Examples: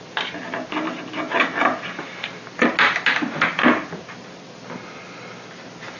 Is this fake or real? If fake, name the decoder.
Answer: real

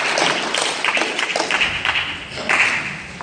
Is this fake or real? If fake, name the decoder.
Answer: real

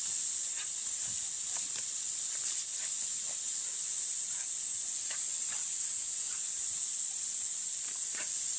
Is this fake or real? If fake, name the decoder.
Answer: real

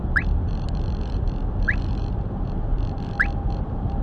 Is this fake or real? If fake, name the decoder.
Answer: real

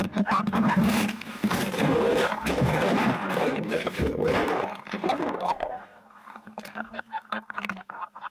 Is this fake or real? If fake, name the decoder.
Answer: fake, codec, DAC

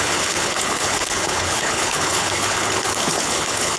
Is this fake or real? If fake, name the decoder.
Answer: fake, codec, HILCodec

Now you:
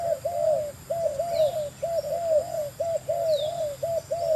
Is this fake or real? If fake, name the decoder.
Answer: real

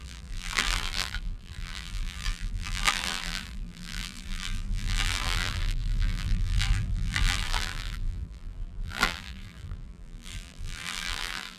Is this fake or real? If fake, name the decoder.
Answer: fake, vocoder, BigVGAN v2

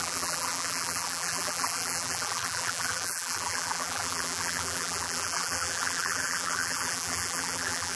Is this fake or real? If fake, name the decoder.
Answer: fake, vocoder, BigVGAN v2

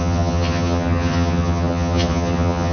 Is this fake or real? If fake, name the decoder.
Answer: fake, vocoder, HiFi-GAN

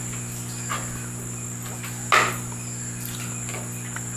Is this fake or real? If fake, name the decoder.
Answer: real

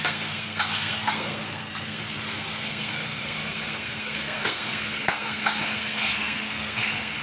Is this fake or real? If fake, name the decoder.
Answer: fake, codec, SNAC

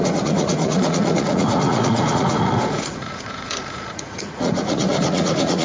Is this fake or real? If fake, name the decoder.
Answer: fake, vocoder, Vocos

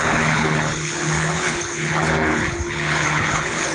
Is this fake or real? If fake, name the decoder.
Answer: fake, codec, HILCodec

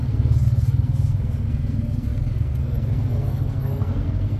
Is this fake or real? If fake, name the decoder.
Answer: fake, codec, SNAC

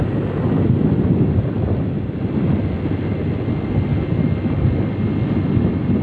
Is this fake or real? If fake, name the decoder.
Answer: real